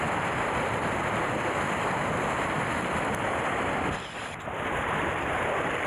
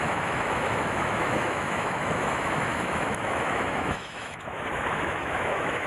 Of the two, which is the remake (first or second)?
second